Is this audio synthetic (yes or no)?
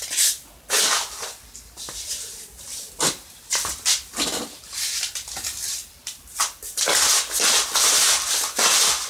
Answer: no